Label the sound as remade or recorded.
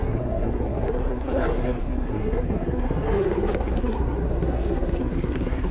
remade